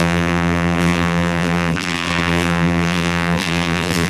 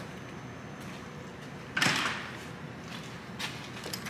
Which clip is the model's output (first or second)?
first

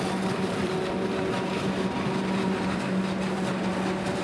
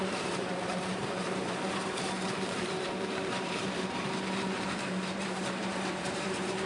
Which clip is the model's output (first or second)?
second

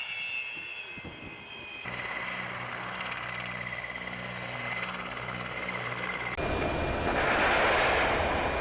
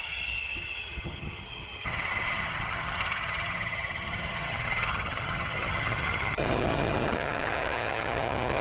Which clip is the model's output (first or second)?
second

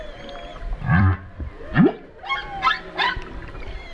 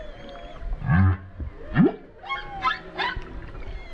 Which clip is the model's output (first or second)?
first